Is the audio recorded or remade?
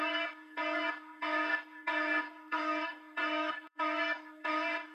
remade